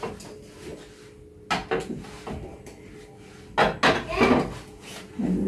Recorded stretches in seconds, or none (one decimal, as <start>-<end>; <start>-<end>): 0.0-5.5